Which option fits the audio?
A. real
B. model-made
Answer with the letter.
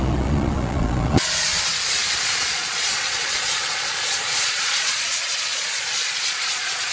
B